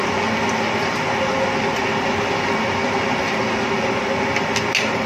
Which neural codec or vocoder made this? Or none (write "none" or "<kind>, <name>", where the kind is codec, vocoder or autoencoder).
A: none